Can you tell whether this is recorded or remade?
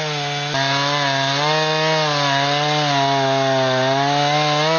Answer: recorded